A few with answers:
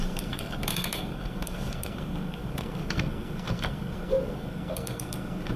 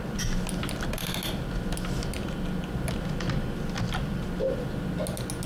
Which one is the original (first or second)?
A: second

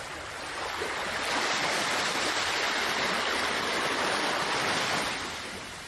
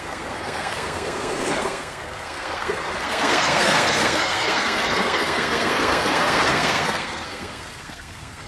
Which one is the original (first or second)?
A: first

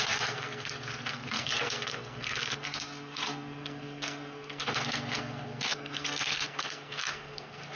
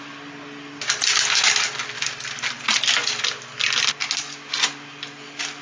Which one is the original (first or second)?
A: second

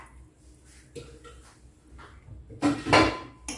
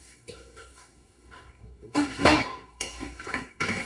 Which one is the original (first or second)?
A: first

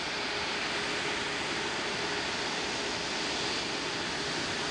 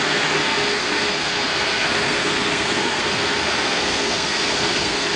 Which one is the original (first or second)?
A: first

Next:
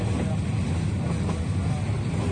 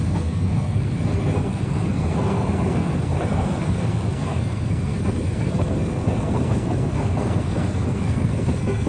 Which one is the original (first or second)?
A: first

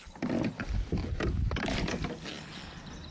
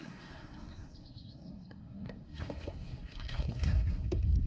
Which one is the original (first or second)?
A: first